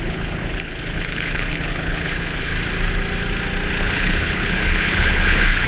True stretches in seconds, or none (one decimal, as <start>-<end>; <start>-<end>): 2.5-3.8